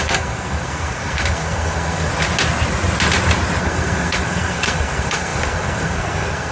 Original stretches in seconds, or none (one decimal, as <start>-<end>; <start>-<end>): 2.1-3.6